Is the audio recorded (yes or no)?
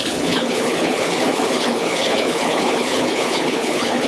no